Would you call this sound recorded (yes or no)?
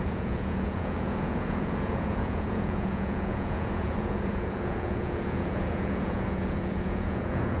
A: no